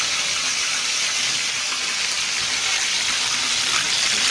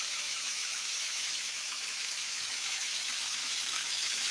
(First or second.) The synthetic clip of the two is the second